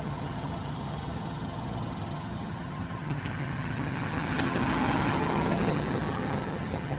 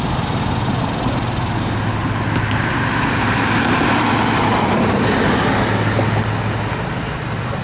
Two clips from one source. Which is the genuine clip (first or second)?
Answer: second